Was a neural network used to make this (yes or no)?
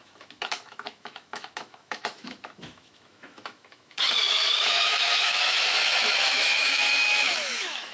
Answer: yes